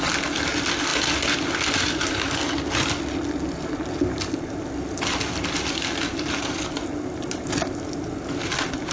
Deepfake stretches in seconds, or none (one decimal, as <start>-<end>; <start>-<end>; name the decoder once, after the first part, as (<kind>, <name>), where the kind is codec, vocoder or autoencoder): none